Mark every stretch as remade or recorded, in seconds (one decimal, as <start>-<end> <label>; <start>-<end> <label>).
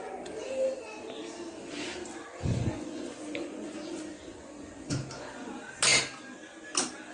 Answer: 0.0-2.3 recorded; 2.3-5.5 remade; 5.5-7.1 recorded